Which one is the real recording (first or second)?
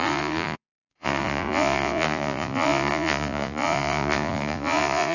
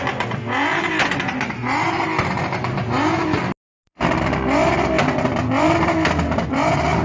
second